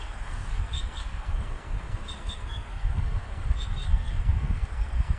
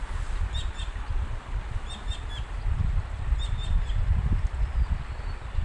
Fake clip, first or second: first